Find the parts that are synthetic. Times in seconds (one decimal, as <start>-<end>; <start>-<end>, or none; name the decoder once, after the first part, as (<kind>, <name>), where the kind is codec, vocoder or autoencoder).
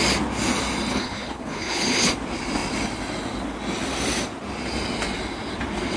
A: 0.9-2.1 (codec, HILCodec)